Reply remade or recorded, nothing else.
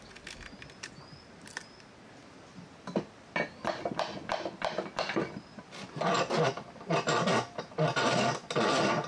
recorded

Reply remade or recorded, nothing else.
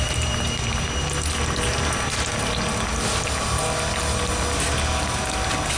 recorded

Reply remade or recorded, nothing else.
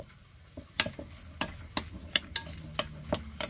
recorded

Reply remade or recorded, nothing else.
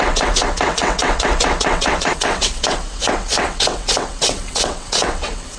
remade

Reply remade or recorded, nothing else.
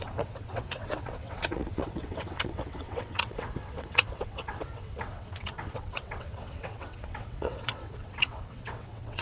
remade